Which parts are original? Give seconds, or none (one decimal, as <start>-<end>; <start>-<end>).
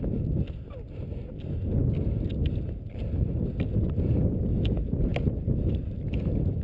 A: 0.0-6.6